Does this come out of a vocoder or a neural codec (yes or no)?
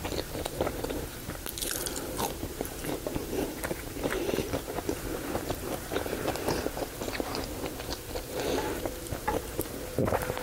yes